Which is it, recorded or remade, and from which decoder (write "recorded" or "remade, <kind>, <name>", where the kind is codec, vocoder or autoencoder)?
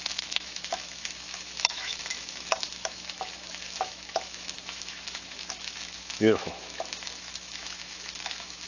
remade, autoencoder, DAC-VAE